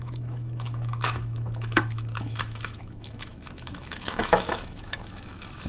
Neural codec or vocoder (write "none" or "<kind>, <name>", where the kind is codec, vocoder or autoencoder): autoencoder, DAC-VAE